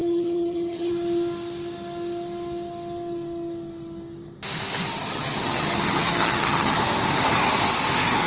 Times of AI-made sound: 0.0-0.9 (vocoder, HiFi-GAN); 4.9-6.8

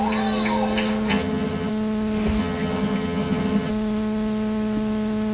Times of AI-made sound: 1.1-1.7 (vocoder, HiFi-GAN); 2.4-3.7